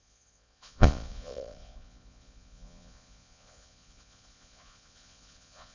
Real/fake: fake